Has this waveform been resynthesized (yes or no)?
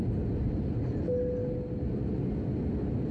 no